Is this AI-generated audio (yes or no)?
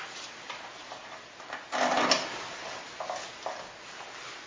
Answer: no